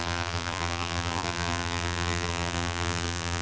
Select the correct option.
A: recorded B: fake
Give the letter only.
B